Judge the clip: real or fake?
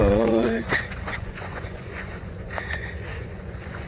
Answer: fake